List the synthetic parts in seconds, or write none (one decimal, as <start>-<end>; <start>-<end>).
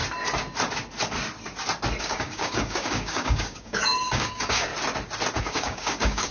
2.0-4.7; 5.4-6.3